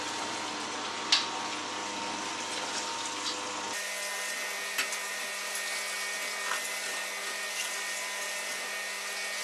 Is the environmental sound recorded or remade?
recorded